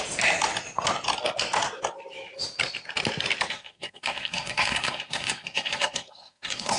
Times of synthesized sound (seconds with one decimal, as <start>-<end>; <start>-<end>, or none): 3.5-6.8